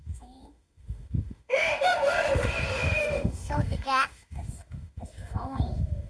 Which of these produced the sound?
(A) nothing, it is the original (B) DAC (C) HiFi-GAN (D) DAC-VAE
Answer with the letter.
D